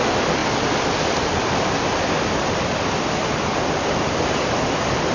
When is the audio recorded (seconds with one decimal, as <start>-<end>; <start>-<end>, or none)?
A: 0.0-5.1